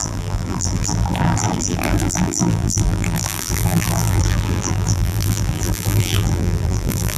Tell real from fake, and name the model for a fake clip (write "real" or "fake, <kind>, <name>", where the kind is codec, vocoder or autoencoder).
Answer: fake, vocoder, BigVGAN v2